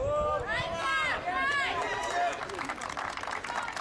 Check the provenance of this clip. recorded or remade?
recorded